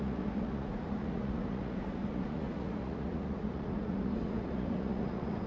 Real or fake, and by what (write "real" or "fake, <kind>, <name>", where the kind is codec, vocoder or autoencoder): fake, vocoder, Vocos